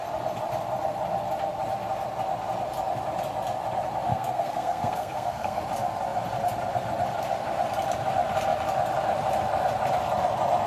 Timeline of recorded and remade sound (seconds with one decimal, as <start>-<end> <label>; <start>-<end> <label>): 0.0-4.1 recorded; 4.1-5.6 remade; 5.6-10.7 recorded